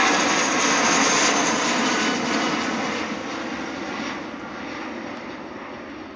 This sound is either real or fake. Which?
real